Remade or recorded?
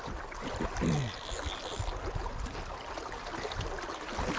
recorded